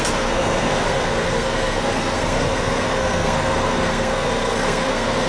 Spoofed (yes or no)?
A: yes